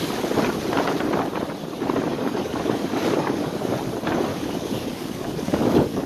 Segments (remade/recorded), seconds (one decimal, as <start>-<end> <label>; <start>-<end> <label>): 0.0-2.1 recorded; 2.1-3.7 remade; 3.7-4.3 recorded; 4.3-6.1 remade